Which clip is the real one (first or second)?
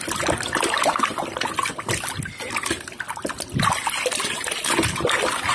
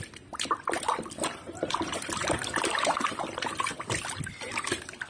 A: first